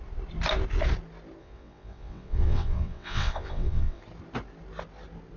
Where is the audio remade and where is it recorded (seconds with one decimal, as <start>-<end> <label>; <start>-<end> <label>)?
0.0-1.4 recorded; 1.4-4.0 remade; 4.0-5.4 recorded